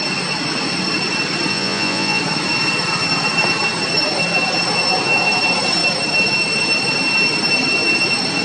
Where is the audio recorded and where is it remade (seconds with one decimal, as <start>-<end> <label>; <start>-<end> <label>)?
0.0-1.5 recorded; 1.5-2.2 remade; 2.2-8.4 recorded